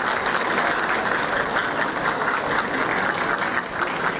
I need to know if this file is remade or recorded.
recorded